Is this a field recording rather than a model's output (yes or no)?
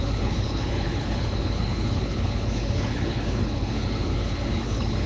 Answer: no